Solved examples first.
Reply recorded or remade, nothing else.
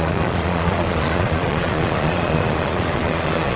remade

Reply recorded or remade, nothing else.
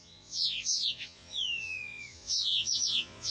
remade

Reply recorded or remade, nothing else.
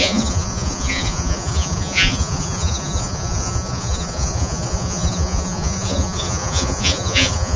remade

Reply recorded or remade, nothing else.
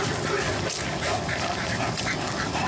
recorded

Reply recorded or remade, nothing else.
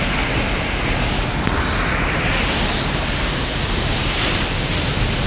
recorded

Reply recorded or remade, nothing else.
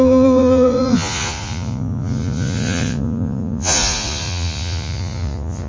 remade